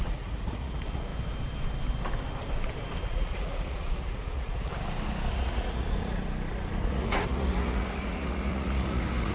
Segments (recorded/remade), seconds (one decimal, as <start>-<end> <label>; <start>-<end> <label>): 0.0-1.1 remade; 1.1-3.0 recorded; 3.0-4.7 remade; 4.7-5.3 recorded; 5.3-6.2 remade; 6.2-6.9 recorded; 6.9-9.3 remade